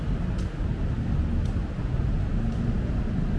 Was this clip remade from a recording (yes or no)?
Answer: no